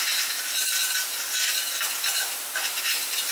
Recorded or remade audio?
recorded